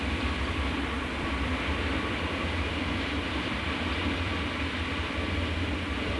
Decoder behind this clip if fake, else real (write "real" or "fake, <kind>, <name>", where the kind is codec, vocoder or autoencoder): fake, vocoder, BigVGAN v2